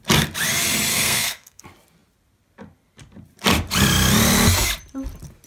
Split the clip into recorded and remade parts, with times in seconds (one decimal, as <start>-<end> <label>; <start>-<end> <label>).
0.0-0.9 recorded; 0.9-1.6 remade; 1.6-5.5 recorded